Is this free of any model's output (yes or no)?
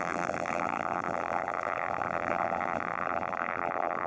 no